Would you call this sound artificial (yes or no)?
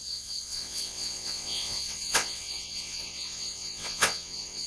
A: yes